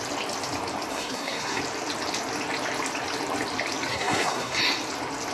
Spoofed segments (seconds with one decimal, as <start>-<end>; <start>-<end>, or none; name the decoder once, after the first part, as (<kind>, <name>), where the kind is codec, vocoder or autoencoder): 0.9-1.6 (codec, SNAC); 3.9-4.6